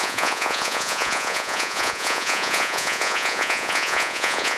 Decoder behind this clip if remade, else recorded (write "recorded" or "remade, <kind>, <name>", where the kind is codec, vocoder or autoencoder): remade, vocoder, Vocos